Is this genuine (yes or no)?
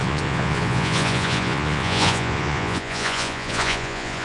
no